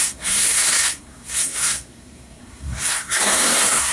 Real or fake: fake